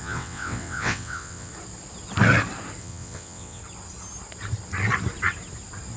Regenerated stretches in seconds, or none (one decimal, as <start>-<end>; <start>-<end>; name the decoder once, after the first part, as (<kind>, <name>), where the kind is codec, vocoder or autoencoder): 0.0-1.5 (vocoder, WaveNeXt); 2.8-3.6